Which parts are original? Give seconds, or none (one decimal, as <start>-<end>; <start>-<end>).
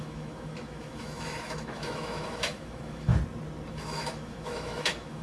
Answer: 3.1-3.7